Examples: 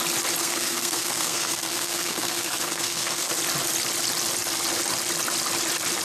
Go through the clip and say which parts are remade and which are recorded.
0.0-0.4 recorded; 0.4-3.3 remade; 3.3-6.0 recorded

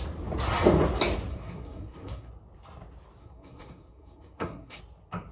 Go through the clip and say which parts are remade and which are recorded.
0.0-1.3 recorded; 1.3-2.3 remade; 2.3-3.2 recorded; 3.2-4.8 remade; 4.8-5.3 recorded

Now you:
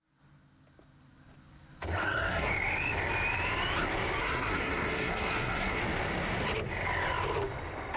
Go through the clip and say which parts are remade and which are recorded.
0.0-2.0 recorded; 2.0-2.5 remade; 2.5-4.2 recorded; 4.2-5.8 remade; 5.8-8.0 recorded

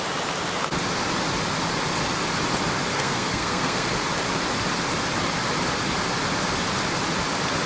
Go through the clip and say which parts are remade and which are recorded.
0.0-2.9 recorded; 2.9-3.9 remade; 3.9-7.7 recorded

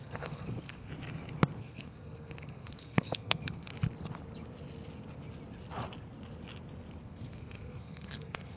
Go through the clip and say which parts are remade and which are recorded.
0.0-0.9 remade; 0.9-1.6 recorded; 1.6-3.7 remade; 3.7-7.0 recorded; 7.0-8.6 remade

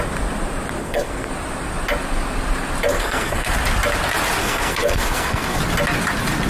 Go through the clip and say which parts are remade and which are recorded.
0.0-0.8 recorded; 0.8-1.3 remade; 1.3-2.9 recorded; 2.9-3.5 remade; 3.5-4.4 recorded; 4.4-5.6 remade; 5.6-6.5 recorded

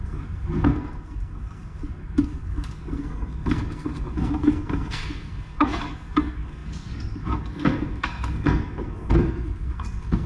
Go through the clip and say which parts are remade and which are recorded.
0.0-10.3 remade